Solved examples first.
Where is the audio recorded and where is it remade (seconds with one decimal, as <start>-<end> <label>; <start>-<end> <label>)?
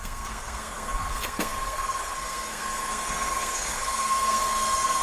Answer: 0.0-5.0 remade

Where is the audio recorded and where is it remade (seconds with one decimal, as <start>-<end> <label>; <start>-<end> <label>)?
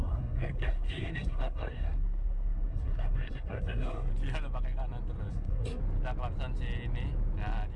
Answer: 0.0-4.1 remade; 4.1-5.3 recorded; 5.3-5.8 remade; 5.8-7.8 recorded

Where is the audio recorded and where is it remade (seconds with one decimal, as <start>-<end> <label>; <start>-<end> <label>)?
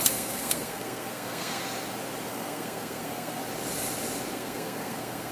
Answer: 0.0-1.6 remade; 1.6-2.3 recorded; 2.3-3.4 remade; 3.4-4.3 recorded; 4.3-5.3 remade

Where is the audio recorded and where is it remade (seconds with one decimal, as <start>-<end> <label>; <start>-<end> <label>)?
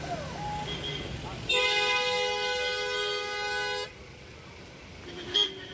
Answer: 0.0-5.7 recorded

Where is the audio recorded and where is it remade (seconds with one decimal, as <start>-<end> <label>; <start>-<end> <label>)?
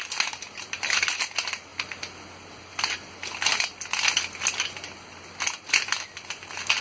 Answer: 0.0-6.8 recorded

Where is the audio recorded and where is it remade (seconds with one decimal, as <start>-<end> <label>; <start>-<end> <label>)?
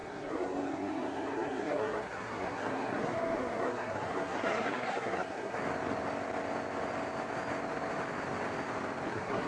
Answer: 0.0-5.6 remade; 5.6-9.1 recorded; 9.1-9.5 remade